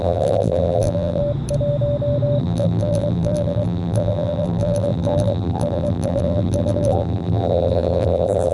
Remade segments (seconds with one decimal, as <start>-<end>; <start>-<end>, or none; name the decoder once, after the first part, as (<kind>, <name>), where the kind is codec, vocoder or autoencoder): 0.0-1.2 (vocoder, BigVGAN v2); 2.4-8.5